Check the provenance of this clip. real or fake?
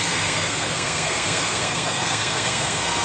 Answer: fake